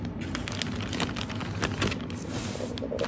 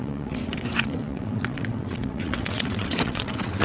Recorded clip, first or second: first